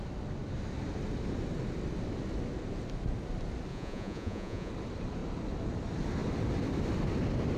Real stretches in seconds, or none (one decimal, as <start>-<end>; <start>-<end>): 0.0-3.7; 4.7-7.6